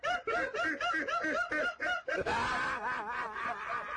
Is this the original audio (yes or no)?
yes